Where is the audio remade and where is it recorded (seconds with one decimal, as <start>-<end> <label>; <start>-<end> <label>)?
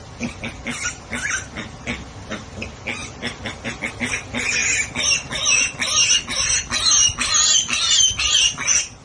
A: 0.0-9.0 recorded